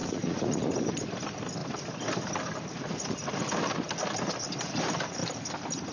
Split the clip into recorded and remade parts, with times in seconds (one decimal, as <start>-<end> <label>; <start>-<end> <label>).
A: 0.0-0.7 remade; 0.7-5.9 recorded